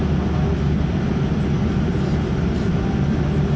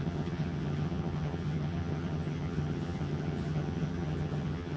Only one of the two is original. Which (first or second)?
first